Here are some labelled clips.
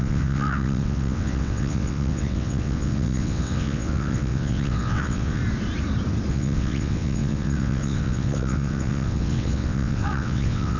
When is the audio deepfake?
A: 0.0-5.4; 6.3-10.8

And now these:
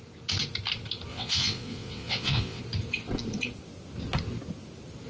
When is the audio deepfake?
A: 1.1-2.6

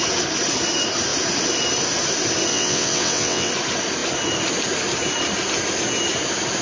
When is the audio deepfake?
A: 2.5-3.5

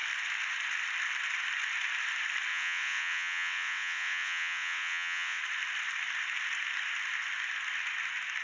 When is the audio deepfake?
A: 2.5-5.4

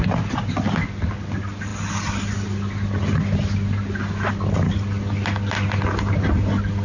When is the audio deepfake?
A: none

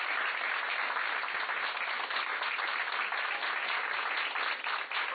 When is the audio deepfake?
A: none